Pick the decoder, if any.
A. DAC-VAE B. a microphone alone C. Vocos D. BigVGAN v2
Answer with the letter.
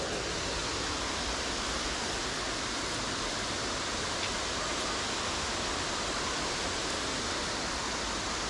B